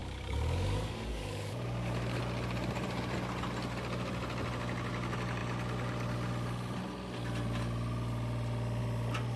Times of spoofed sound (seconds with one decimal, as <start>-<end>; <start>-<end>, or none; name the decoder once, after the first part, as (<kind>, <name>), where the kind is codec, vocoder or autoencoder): 0.0-2.2 (codec, DAC)